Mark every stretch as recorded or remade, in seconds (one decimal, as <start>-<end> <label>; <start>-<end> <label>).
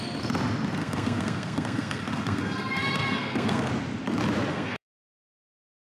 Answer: 0.0-0.8 recorded; 0.8-3.7 remade; 3.7-4.5 recorded; 4.5-5.3 remade; 5.3-5.9 recorded